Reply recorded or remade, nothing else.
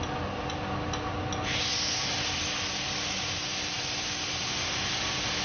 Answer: recorded